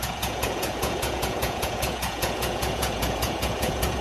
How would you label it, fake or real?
fake